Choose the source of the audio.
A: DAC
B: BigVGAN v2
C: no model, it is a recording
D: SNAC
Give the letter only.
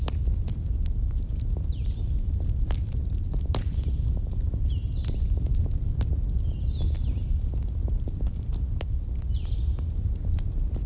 C